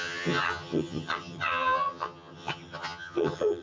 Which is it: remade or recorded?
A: remade